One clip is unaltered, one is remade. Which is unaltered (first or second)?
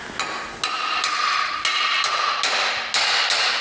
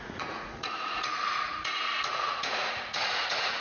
first